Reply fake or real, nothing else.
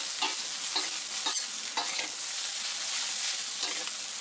real